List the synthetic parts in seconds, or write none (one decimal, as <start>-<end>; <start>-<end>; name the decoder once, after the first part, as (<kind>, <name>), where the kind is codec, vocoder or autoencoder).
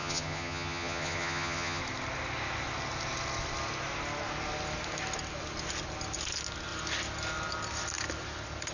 0.0-1.8 (vocoder, HiFi-GAN)